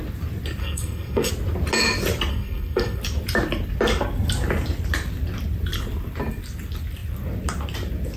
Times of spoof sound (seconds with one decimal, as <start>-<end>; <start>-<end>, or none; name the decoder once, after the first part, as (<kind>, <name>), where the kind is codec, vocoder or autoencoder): 0.6-1.3 (codec, SNAC); 2.3-3.0